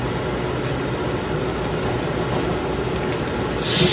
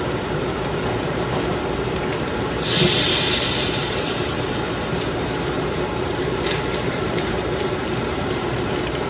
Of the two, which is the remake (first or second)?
second